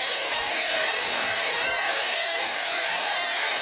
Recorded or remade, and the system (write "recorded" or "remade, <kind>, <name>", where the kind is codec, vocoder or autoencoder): remade, codec, DAC